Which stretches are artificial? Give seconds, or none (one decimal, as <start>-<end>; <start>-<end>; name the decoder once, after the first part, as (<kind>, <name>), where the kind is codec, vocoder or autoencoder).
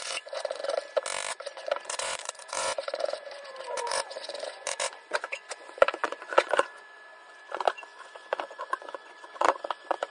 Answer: 0.0-0.6 (vocoder, Vocos); 1.3-10.1